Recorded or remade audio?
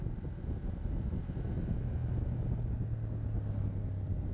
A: recorded